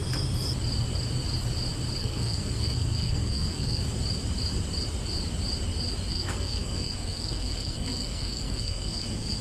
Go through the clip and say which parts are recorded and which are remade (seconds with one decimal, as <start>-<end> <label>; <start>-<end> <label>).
0.0-2.0 recorded; 2.0-3.8 remade; 3.8-6.1 recorded; 6.1-9.4 remade